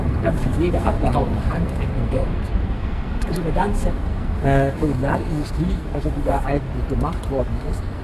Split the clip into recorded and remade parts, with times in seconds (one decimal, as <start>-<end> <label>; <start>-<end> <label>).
0.0-6.7 remade; 6.7-7.4 recorded; 7.4-8.0 remade